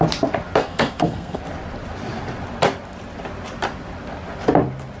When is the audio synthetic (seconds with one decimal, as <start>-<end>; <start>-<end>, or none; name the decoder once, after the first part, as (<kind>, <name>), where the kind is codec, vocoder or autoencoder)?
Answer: 0.6-1.4 (codec, SNAC)